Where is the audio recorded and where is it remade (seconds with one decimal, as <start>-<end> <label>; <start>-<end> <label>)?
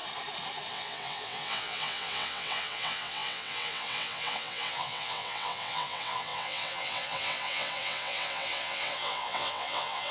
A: 0.0-0.7 recorded; 0.7-10.1 remade